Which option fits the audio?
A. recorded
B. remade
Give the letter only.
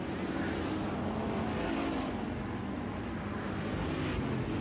A